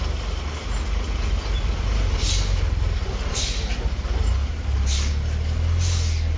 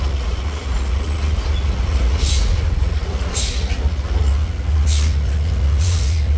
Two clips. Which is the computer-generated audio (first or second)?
second